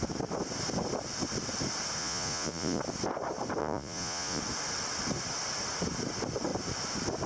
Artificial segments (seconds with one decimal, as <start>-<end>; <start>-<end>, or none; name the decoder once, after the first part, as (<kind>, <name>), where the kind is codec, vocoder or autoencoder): 2.0-2.8 (vocoder, Vocos); 3.6-4.4